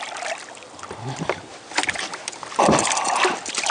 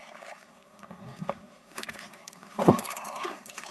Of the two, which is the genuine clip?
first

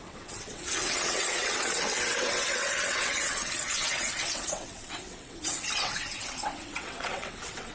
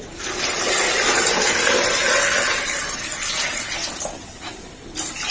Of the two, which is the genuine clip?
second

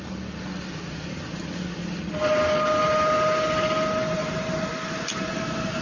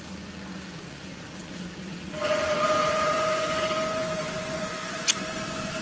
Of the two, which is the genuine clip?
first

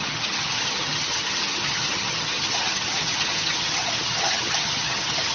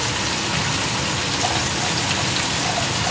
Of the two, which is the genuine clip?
second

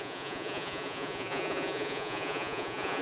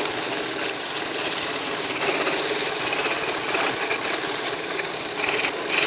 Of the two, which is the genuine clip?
second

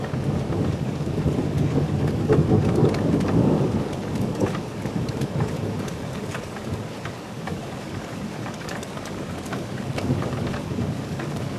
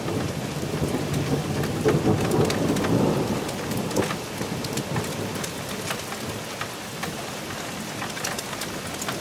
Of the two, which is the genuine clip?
second